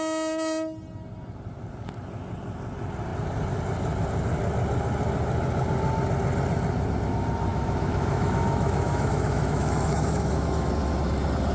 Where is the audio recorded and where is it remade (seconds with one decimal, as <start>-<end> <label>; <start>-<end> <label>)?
0.0-7.5 recorded; 7.5-10.7 remade; 10.7-11.5 recorded